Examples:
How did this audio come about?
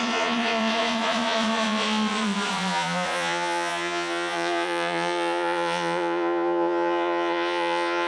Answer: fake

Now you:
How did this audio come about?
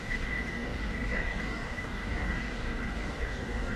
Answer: fake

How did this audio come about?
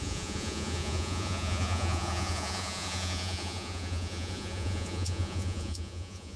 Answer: fake